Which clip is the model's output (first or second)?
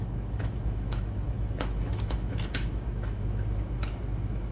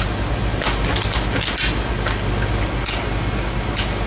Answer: first